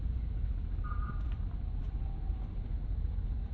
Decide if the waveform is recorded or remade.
recorded